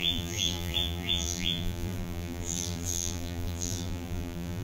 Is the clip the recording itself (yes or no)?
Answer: no